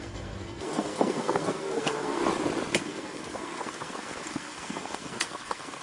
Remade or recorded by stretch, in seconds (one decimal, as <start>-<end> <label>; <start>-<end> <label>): 0.0-2.2 remade; 2.2-2.8 recorded; 2.8-5.8 remade